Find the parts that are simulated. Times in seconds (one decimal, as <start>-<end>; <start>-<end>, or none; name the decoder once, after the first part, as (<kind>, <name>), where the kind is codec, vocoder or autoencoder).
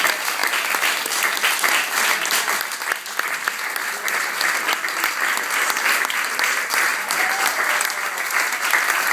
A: 6.9-7.7 (vocoder, BigVGAN v2)